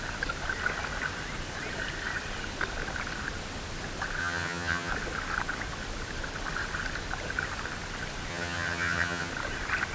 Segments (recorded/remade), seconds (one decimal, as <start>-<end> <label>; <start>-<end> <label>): 0.0-4.2 recorded; 4.2-4.9 remade; 4.9-8.3 recorded; 8.3-9.3 remade; 9.3-9.9 recorded